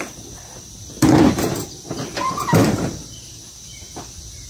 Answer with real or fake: real